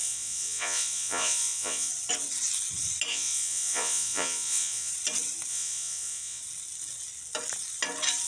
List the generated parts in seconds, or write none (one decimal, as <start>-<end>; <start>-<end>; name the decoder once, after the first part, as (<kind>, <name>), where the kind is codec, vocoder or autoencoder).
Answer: 0.0-1.9 (vocoder, Vocos); 3.1-4.9; 5.5-6.4